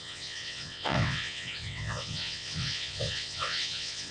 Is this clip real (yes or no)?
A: no